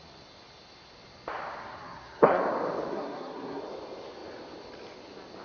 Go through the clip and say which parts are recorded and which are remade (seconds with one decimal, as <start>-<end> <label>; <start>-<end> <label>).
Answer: 0.0-1.6 recorded; 1.6-2.4 remade; 2.4-2.9 recorded; 2.9-3.6 remade; 3.6-5.4 recorded